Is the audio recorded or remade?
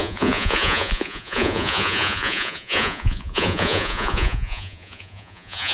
remade